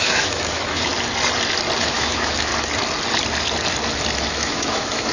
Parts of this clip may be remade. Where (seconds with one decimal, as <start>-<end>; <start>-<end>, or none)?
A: 0.0-0.9; 1.8-2.5; 4.3-5.1

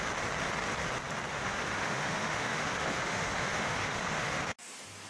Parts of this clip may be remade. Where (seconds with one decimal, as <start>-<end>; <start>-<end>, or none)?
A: 1.3-4.4